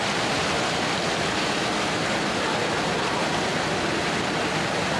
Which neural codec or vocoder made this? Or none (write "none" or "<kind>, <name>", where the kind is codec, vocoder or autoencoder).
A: none